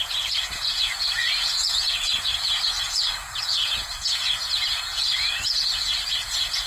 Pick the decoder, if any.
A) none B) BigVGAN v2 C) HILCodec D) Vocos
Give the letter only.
D